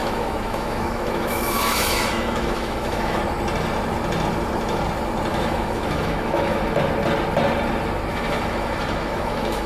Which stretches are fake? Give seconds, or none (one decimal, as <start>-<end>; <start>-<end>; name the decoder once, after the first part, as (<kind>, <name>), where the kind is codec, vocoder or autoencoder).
0.0-3.2 (autoencoder, DAC-VAE); 5.3-6.6; 8.1-9.7